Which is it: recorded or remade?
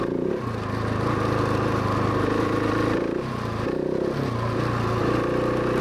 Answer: recorded